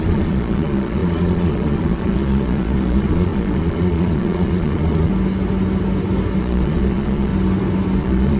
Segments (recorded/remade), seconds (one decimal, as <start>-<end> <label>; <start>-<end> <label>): 0.0-5.1 remade; 5.1-6.4 recorded; 6.4-7.3 remade; 7.3-8.0 recorded; 8.0-8.4 remade